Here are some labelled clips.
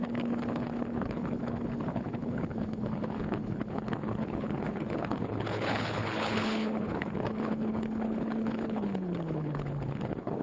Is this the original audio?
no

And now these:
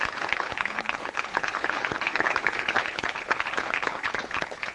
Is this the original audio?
no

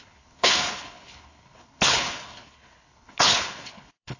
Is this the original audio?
no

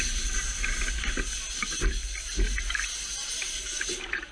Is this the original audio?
yes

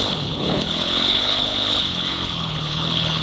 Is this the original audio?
no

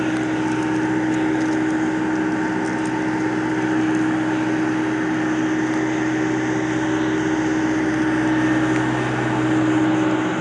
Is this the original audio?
yes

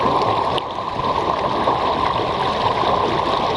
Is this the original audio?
yes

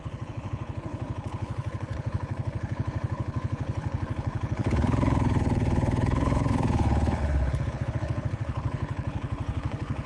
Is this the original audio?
no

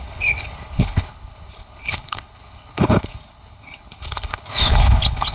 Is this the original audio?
no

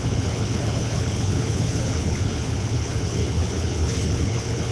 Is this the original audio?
no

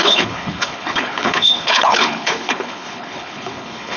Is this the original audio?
no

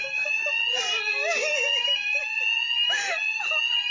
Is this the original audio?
yes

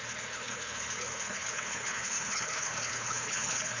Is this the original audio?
no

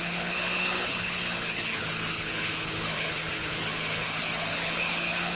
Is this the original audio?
no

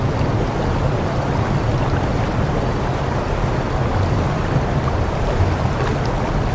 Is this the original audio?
yes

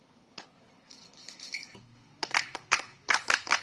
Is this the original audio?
no